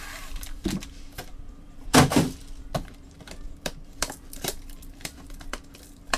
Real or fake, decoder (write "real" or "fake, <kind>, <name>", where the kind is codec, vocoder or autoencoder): fake, vocoder, BigVGAN v2